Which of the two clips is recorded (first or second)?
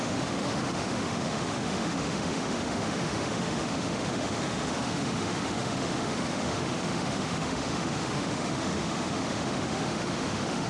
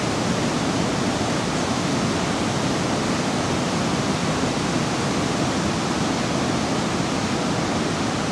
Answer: second